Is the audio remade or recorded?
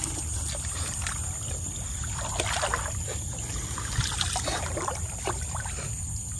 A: recorded